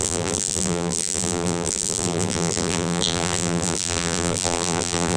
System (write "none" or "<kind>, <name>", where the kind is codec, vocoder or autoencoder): vocoder, BigVGAN v2